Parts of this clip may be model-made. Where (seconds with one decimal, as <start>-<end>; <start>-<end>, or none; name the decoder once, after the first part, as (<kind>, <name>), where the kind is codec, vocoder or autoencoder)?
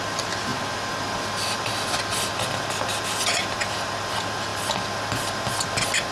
none